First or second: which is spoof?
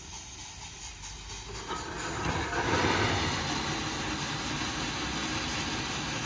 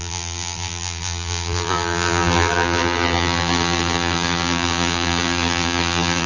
second